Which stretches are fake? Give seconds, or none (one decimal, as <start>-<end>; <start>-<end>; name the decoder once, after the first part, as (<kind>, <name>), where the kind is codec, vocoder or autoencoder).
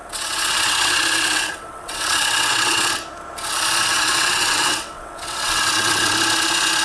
0.0-2.9 (vocoder, WaveNeXt); 3.9-6.1